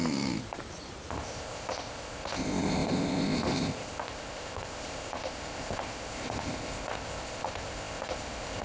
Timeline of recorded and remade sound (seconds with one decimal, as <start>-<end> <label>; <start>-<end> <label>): 0.0-1.1 recorded; 1.1-8.6 remade